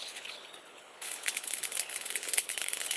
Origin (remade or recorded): remade